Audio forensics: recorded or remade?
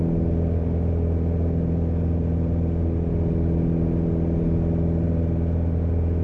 recorded